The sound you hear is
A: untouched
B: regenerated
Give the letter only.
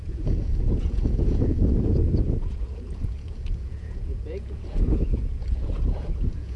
B